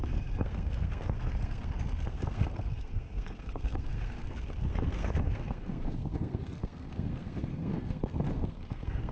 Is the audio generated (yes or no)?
yes